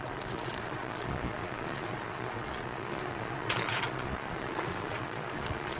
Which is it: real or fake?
fake